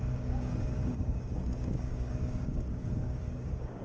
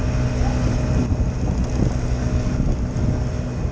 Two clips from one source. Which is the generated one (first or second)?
first